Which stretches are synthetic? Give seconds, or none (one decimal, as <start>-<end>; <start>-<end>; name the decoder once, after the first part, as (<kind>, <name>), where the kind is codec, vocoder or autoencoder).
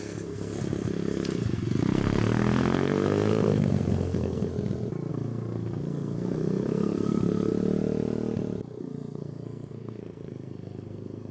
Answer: 0.0-4.5 (codec, SNAC); 5.1-7.5; 8.8-11.3